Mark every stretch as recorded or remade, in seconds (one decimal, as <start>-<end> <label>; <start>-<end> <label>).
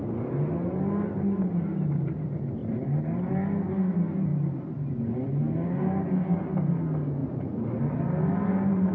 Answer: 0.0-2.6 recorded; 2.6-3.3 remade; 3.3-7.2 recorded; 7.2-7.8 remade; 7.8-8.9 recorded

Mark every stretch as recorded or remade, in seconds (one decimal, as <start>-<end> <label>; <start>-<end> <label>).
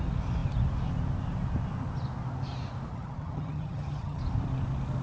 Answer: 0.0-2.9 recorded; 2.9-4.2 remade; 4.2-5.0 recorded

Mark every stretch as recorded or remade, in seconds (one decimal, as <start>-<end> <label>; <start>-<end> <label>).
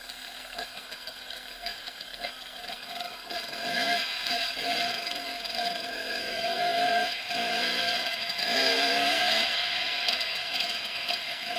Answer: 0.0-11.6 remade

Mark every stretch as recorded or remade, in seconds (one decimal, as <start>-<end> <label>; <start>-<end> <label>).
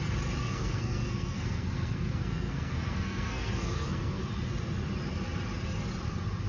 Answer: 0.0-0.4 recorded; 0.4-4.2 remade; 4.2-6.5 recorded